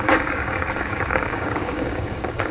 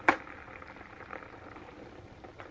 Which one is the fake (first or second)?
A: first